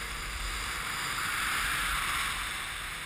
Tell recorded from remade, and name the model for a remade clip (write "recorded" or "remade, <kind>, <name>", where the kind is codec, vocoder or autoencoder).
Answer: recorded